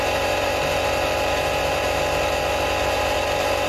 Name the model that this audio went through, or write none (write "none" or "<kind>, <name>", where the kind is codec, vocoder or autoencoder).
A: vocoder, BigVGAN v2